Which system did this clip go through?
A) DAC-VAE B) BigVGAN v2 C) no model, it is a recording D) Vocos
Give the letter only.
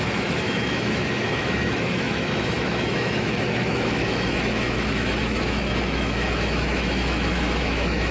A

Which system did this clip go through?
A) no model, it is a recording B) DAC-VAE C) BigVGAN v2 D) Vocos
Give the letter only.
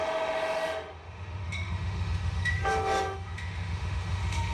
B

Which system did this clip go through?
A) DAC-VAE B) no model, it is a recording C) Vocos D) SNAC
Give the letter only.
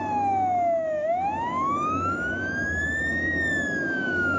A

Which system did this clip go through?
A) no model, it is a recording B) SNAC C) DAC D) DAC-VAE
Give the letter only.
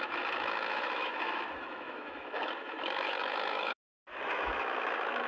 D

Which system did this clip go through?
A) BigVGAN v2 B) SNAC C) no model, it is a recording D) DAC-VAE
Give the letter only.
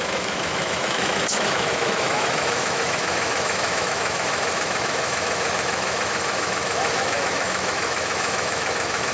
D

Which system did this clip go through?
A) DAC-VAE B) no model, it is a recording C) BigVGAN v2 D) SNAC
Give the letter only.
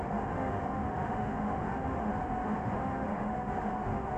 A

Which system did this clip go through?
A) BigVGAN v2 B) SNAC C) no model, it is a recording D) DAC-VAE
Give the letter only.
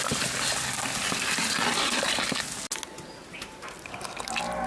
C